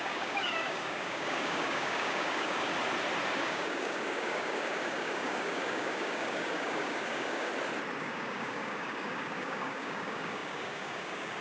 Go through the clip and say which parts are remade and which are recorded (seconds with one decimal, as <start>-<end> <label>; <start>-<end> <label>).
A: 0.0-2.7 remade; 2.7-3.4 recorded; 3.4-7.5 remade; 7.5-8.0 recorded; 8.0-11.4 remade

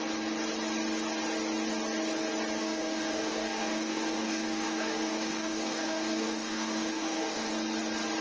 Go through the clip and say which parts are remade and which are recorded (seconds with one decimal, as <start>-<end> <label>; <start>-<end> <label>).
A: 0.0-2.6 recorded; 2.6-7.5 remade; 7.5-8.2 recorded

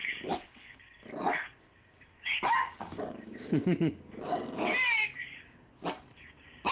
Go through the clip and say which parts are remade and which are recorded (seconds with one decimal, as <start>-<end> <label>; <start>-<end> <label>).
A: 0.0-0.8 remade; 0.8-1.8 recorded; 1.8-5.8 remade; 5.8-6.7 recorded

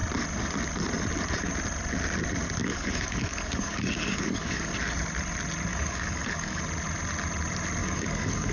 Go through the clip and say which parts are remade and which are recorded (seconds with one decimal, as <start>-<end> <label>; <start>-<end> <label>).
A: 0.0-2.6 recorded; 2.6-4.7 remade; 4.7-5.7 recorded; 5.7-6.6 remade; 6.6-7.8 recorded; 7.8-8.5 remade